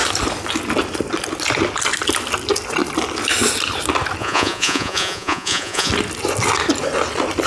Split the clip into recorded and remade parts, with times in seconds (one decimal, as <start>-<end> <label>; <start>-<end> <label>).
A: 0.0-4.2 recorded; 4.2-5.9 remade; 5.9-7.5 recorded